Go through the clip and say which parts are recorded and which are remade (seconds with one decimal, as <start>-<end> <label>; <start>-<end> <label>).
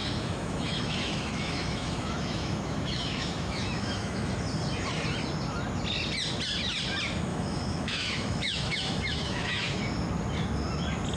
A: 0.0-4.3 remade; 4.3-7.3 recorded; 7.3-9.8 remade; 9.8-11.2 recorded